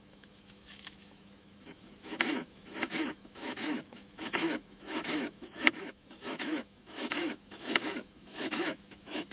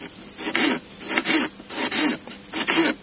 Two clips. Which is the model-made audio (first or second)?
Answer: first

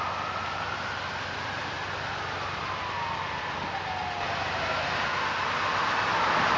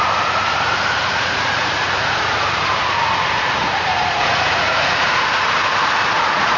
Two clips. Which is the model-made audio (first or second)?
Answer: second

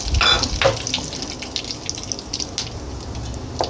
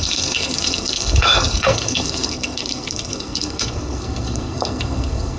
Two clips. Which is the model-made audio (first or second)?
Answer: second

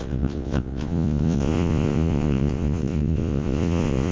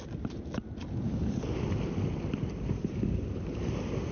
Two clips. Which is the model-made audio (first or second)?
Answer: first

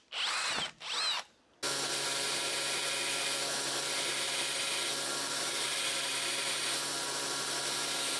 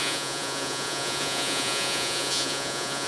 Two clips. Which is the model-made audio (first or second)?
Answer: second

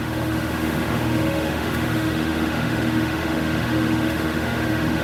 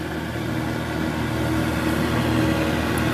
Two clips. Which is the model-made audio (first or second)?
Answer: first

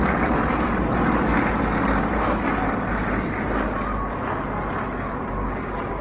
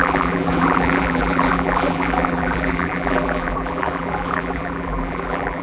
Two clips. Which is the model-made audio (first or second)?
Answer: second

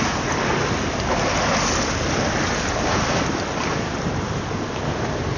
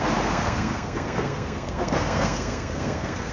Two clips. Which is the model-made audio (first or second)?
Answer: second